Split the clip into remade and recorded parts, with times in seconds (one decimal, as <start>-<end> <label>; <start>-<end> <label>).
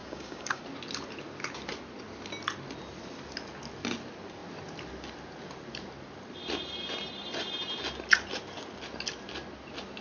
0.0-0.6 remade; 0.6-10.0 recorded